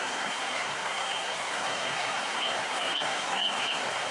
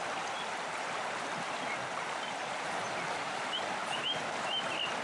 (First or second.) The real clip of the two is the second